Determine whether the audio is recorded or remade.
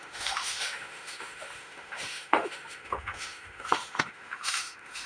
remade